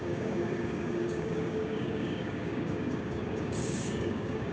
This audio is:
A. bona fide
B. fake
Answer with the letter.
B